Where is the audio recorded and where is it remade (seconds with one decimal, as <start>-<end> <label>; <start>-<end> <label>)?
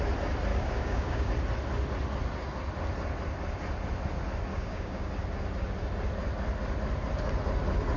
0.0-0.5 recorded; 0.5-1.3 remade; 1.3-4.5 recorded; 4.5-5.1 remade; 5.1-8.0 recorded